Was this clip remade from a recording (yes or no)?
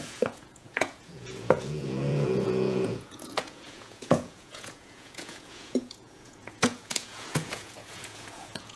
yes